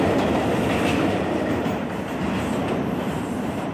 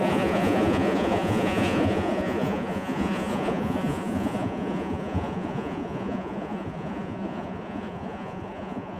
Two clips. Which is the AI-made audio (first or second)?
second